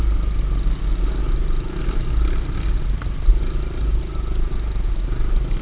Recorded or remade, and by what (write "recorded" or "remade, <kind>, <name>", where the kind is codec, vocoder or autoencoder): recorded